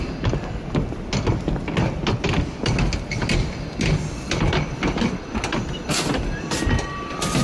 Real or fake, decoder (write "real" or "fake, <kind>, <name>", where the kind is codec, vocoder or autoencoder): real